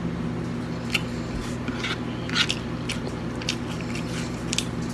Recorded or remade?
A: recorded